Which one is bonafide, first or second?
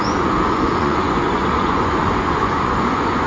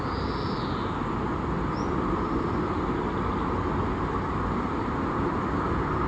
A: second